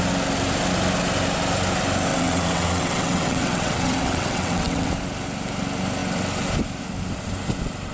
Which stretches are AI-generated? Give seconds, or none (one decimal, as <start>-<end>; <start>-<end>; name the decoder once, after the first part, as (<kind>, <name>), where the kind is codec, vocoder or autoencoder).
2.1-4.9 (vocoder, WaveNeXt)